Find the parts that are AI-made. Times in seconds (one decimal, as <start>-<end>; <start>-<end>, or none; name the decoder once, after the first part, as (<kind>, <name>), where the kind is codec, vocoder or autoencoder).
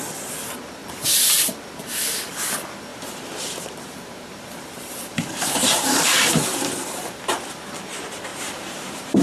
2.9-7.2 (vocoder, BigVGAN v2); 8.3-9.2